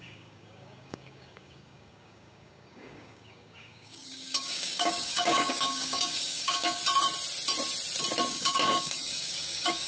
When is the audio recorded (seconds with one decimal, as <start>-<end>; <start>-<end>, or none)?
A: 6.8-8.3